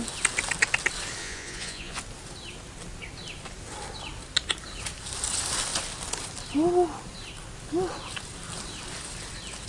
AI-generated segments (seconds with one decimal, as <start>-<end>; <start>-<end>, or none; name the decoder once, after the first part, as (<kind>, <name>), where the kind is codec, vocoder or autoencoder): 1.2-2.0 (vocoder, Vocos)

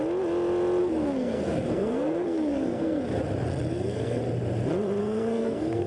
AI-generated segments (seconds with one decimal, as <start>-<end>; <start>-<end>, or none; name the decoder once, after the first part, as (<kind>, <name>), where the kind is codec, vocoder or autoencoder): 0.8-3.0 (codec, SNAC); 3.7-4.2; 5.0-5.9

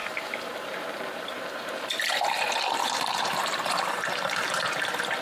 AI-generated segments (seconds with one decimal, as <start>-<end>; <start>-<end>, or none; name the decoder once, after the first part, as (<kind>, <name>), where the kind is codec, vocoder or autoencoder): 0.0-1.8 (vocoder, BigVGAN v2); 2.8-4.5

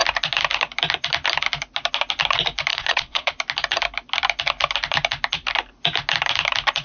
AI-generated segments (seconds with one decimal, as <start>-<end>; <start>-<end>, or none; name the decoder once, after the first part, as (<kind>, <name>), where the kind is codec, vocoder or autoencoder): 2.7-3.3 (vocoder, WaveNeXt)

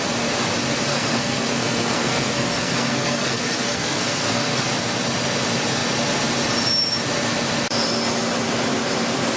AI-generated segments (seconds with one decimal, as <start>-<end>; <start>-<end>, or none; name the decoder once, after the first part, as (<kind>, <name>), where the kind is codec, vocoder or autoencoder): 0.9-4.7 (codec, SNAC)

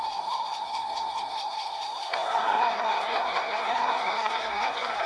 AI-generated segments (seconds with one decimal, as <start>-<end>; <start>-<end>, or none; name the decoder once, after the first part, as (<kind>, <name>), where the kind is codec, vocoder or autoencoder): 0.0-5.1 (codec, SNAC)